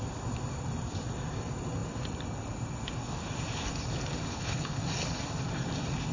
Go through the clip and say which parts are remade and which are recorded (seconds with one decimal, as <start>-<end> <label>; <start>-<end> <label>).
0.0-4.3 recorded; 4.3-4.8 remade; 4.8-6.1 recorded